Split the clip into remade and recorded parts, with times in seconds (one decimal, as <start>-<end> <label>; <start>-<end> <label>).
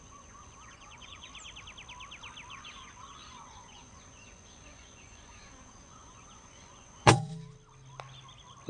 0.0-1.3 remade; 1.3-2.5 recorded; 2.5-7.3 remade; 7.3-8.7 recorded